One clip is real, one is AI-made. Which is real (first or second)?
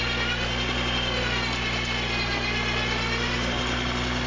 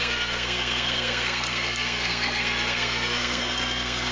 first